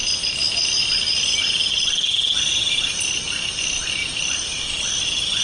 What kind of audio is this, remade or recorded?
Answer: recorded